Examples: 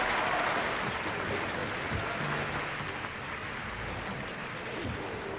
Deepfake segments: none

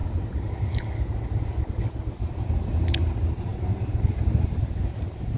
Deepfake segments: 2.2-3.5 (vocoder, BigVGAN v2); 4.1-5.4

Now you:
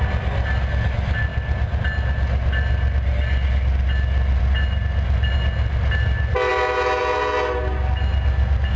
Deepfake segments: none

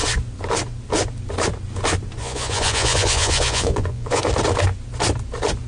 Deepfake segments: 2.2-4.2 (vocoder, Vocos)

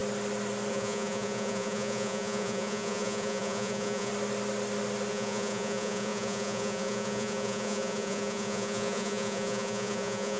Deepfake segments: 0.7-4.1 (vocoder, Vocos); 5.1-10.4